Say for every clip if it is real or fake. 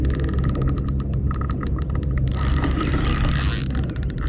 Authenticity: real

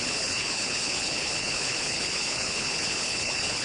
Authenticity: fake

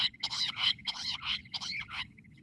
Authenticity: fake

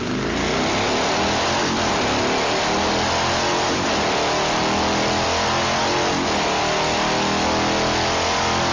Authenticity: real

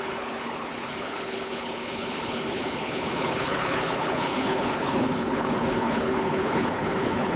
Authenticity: fake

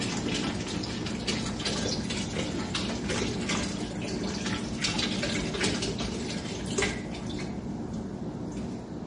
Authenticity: real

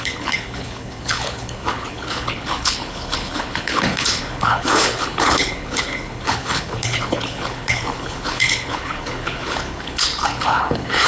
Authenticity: fake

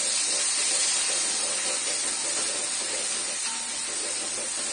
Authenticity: real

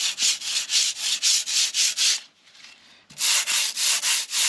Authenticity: real